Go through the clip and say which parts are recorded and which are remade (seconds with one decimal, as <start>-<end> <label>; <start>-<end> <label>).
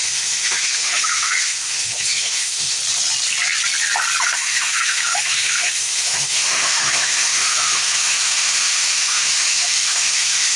0.0-2.8 remade; 2.8-4.2 recorded; 4.2-10.6 remade